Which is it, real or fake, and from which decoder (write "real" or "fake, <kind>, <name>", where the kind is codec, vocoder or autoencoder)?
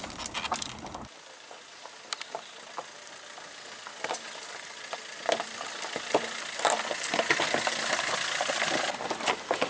real